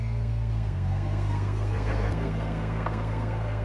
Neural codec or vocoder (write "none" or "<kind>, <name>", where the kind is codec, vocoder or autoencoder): codec, SNAC